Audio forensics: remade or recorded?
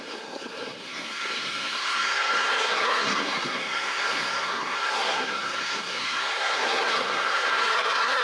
remade